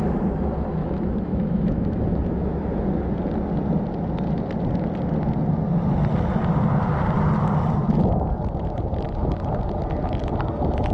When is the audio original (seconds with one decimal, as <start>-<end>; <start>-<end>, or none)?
0.0-0.8; 2.8-10.9